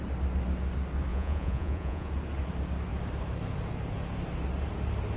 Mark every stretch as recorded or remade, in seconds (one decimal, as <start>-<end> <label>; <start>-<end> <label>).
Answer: 0.0-1.1 recorded; 1.1-2.1 remade; 2.1-5.2 recorded